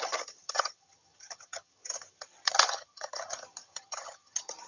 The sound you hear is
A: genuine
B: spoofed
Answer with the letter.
B